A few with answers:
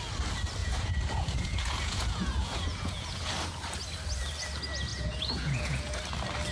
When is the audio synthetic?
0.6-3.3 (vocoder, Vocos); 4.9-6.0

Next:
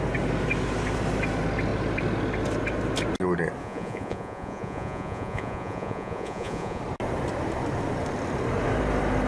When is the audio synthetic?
3.6-6.8 (vocoder, Vocos)